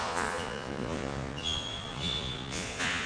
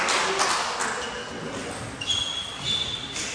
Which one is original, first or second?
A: second